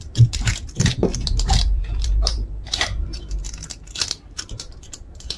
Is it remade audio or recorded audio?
remade